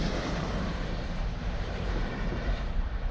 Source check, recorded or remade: remade